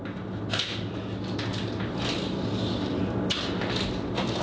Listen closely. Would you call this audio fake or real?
real